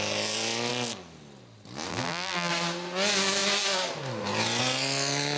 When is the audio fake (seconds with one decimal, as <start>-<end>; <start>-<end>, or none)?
1.9-2.5